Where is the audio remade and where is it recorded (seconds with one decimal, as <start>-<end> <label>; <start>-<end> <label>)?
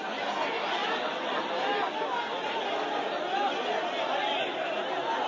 0.0-5.3 recorded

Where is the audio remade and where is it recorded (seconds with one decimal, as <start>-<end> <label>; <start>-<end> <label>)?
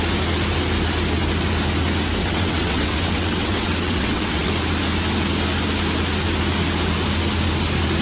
0.0-2.2 recorded; 2.2-4.5 remade; 4.5-8.0 recorded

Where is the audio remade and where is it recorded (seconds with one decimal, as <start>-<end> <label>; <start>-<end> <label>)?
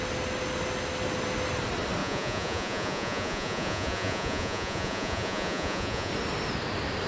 0.0-2.0 recorded; 2.0-6.1 remade; 6.1-7.1 recorded